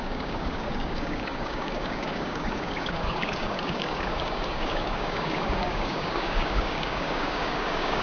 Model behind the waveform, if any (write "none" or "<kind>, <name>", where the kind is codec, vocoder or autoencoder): codec, DAC